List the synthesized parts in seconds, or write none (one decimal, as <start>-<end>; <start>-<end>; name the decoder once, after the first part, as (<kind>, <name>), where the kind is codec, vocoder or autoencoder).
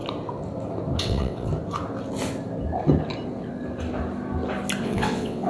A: 1.0-1.5 (vocoder, WaveNeXt); 4.8-5.5